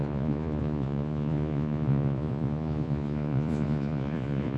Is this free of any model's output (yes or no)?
no